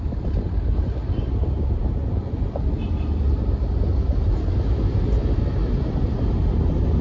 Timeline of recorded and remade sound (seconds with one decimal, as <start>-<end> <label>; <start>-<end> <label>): 0.0-7.0 recorded